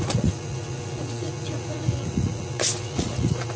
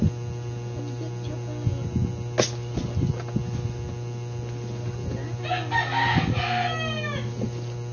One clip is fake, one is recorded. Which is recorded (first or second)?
second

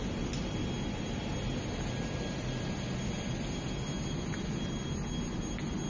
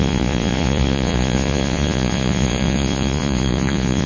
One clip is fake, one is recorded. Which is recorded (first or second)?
first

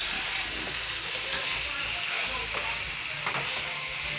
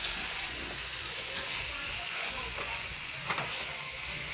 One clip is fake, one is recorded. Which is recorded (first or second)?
first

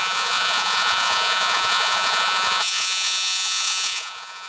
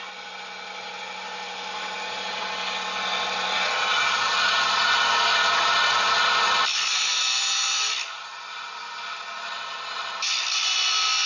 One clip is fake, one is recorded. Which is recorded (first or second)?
second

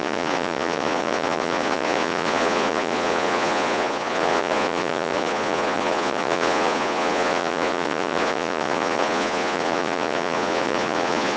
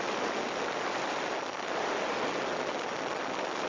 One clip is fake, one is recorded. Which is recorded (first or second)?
second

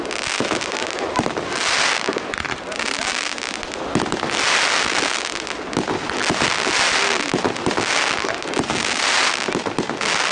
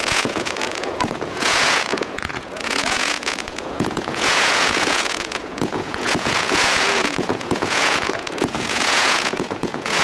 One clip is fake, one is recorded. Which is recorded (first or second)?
first